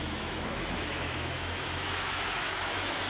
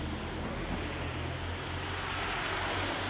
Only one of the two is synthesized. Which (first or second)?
first